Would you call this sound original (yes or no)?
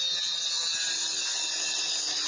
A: yes